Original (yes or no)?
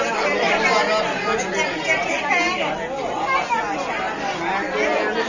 yes